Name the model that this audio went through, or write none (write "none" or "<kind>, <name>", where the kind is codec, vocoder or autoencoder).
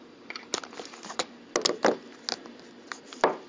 none